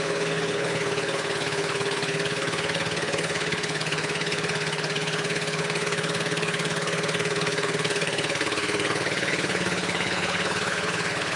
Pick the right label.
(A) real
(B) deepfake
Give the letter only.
B